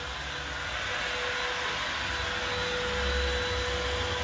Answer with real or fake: real